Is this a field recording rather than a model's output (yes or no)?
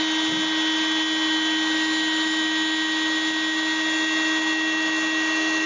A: yes